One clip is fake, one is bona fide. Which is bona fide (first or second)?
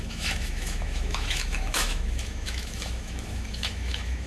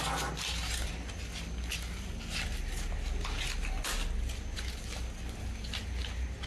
second